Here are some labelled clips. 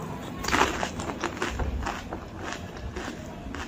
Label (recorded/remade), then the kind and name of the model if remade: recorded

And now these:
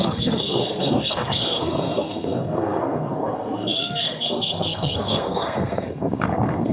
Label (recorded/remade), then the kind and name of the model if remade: remade, codec, SNAC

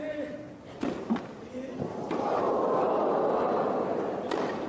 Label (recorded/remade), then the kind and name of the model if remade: recorded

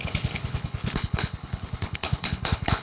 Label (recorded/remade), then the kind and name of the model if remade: remade, codec, HILCodec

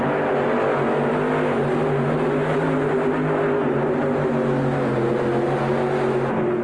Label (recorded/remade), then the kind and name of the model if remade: recorded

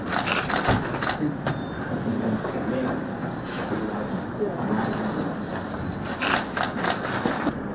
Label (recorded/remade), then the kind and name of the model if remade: recorded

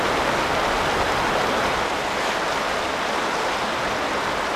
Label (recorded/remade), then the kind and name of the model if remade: recorded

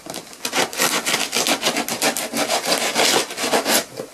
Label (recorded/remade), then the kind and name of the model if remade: recorded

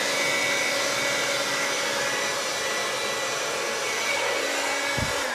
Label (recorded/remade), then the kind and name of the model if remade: recorded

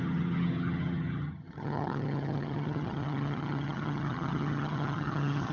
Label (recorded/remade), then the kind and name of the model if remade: remade, vocoder, HiFi-GAN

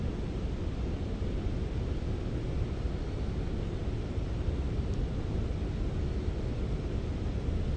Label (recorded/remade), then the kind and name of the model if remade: recorded